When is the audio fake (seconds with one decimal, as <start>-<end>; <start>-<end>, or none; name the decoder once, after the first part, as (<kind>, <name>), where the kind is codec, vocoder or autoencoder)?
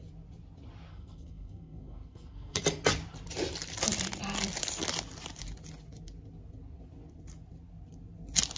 0.9-2.6 (codec, SNAC)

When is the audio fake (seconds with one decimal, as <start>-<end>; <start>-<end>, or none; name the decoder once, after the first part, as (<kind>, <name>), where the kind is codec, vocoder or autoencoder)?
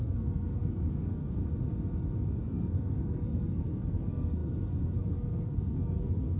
0.0-1.4 (codec, SNAC); 2.3-6.4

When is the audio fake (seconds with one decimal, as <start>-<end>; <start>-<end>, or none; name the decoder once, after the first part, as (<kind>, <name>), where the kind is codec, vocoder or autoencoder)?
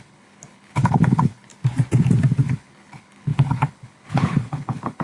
0.0-1.5 (codec, HILCodec); 2.5-5.0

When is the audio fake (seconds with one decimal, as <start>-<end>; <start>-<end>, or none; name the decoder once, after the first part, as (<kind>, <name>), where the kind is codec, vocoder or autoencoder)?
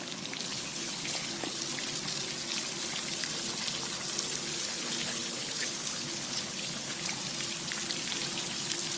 0.5-1.6 (codec, HILCodec); 4.5-7.2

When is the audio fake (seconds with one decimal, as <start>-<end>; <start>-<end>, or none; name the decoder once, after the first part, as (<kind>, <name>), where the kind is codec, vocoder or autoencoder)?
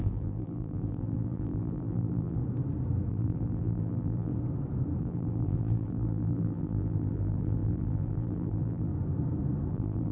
0.0-2.4 (vocoder, BigVGAN v2); 3.1-4.3; 5.0-8.9; 9.7-10.1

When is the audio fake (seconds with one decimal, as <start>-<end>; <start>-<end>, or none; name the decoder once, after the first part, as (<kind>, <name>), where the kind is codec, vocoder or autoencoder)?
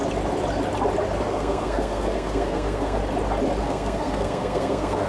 1.2-3.0 (codec, SNAC); 3.6-5.1